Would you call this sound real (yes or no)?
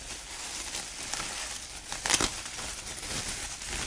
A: yes